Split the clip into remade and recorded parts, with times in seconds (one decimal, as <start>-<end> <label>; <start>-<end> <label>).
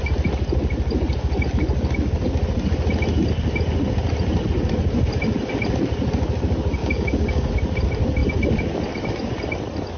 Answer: 0.0-6.8 recorded; 6.8-7.5 remade; 7.5-10.0 recorded